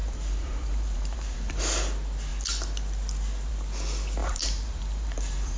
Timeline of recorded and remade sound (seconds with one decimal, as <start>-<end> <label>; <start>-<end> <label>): 0.0-1.6 remade; 1.6-4.2 recorded; 4.2-5.6 remade